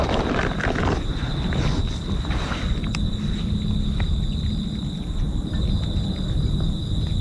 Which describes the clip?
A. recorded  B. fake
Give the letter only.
A